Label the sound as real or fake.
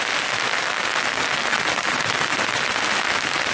real